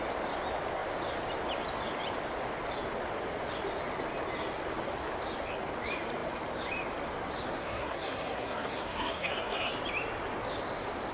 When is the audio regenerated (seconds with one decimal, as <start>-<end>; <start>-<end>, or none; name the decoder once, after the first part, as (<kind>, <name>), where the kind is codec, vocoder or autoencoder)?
7.6-9.7 (codec, SNAC)